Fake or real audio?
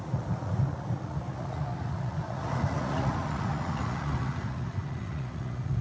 fake